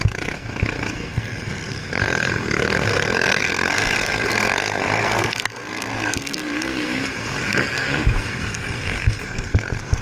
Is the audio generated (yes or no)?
yes